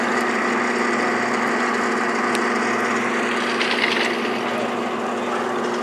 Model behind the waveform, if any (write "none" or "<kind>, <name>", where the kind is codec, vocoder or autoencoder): none